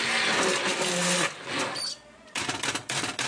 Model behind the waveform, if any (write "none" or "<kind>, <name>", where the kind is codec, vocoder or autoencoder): none